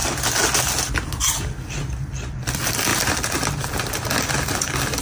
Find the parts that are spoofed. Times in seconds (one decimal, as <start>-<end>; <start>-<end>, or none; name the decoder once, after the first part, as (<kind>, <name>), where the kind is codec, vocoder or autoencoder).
none